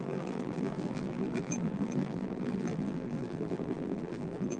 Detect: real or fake fake